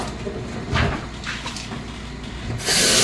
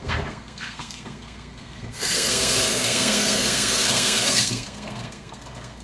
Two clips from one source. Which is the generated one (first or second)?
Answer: second